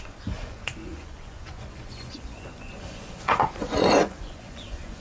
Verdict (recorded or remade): remade